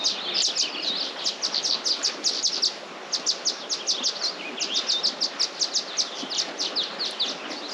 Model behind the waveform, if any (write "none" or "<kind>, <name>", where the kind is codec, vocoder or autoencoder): none